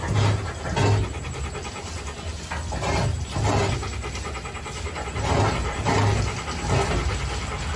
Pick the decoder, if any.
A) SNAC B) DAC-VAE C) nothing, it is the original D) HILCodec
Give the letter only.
C